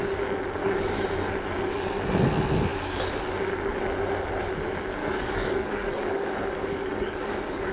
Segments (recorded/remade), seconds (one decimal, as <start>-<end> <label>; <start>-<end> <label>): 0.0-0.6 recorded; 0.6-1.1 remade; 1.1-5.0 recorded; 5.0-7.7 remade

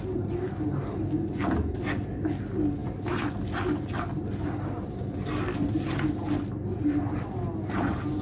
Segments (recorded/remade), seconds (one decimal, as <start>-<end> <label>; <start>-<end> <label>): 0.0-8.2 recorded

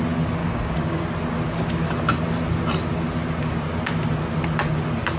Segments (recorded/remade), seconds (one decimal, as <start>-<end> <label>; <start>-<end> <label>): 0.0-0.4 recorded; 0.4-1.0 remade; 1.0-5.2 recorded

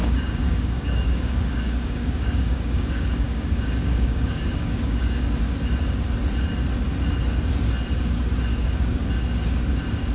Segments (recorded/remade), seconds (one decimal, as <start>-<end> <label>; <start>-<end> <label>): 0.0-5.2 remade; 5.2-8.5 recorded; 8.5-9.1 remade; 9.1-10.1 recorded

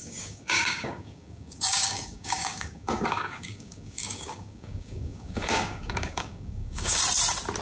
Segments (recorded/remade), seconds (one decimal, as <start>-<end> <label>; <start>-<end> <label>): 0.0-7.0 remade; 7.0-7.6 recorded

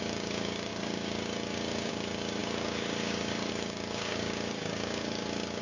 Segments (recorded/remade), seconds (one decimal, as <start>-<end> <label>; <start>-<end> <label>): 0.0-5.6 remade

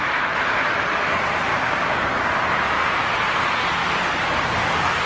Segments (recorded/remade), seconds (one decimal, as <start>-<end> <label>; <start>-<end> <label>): 0.0-1.5 recorded; 1.5-2.3 remade; 2.3-5.1 recorded